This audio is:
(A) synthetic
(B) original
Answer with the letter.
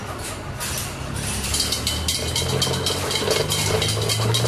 B